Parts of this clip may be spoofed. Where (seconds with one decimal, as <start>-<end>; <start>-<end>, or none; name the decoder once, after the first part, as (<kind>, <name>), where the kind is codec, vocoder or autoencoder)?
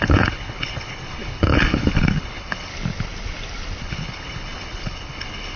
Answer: 0.0-2.7 (codec, HILCodec); 3.8-5.6